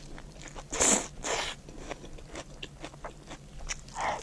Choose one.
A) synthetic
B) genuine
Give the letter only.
B